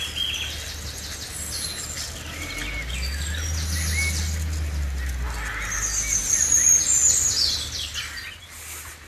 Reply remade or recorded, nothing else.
recorded